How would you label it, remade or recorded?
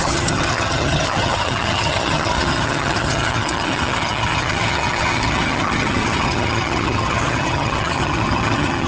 remade